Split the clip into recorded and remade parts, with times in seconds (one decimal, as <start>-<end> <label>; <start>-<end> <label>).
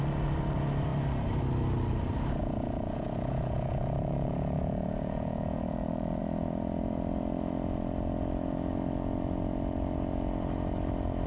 0.0-2.4 recorded; 2.4-6.2 remade; 6.2-11.3 recorded